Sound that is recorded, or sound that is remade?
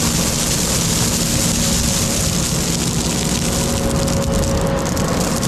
recorded